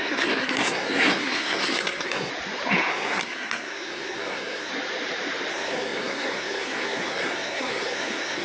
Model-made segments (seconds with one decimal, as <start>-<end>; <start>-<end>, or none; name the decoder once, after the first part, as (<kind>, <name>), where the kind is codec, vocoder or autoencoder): 0.0-2.3 (codec, SNAC); 2.9-4.7; 5.5-8.4